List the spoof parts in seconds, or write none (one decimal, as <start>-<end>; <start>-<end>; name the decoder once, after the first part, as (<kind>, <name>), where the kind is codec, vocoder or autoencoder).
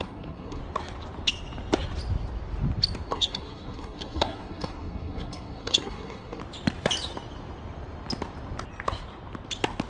0.0-0.6 (codec, SNAC); 3.1-6.4